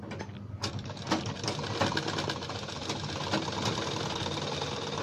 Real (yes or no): yes